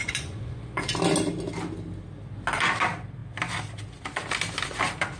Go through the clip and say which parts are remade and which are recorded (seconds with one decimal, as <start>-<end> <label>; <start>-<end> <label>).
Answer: 0.0-0.8 remade; 0.8-5.2 recorded